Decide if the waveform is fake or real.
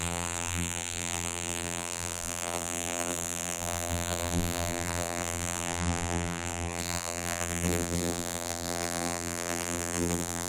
fake